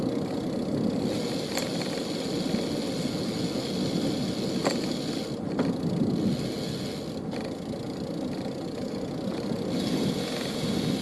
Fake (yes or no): no